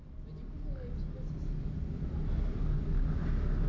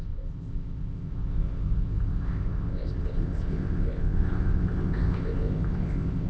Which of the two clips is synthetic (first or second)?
second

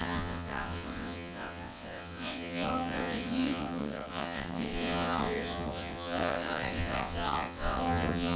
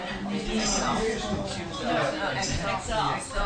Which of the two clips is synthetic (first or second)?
first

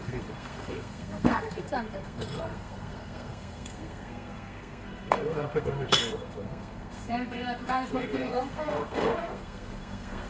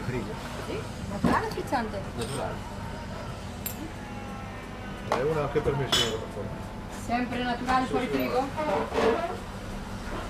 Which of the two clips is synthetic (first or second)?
first